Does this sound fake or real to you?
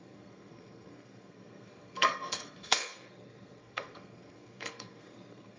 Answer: fake